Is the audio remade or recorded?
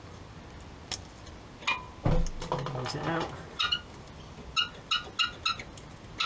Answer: recorded